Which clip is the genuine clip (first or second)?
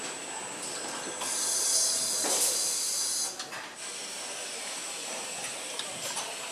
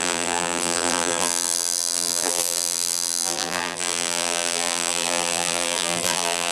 first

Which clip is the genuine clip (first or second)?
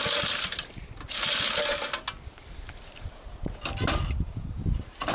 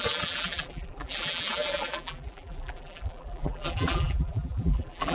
first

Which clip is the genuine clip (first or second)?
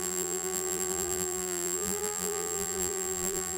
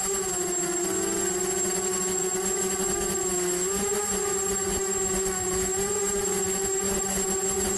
second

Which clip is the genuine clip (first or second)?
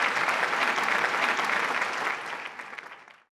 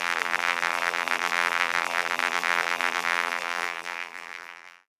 first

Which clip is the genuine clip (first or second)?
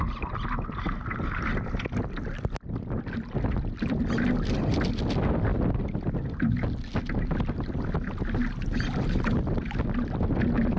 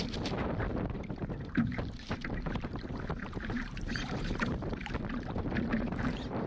first